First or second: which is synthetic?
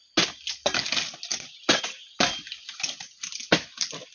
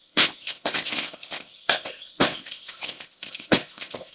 second